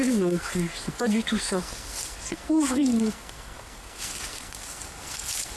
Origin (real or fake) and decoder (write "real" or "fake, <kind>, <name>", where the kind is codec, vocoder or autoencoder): fake, codec, SNAC